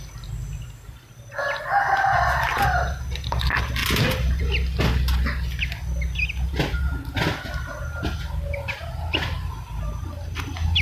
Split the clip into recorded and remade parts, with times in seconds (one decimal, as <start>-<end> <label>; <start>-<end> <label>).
0.0-10.8 recorded